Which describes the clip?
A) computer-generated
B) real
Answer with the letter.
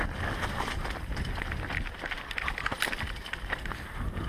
B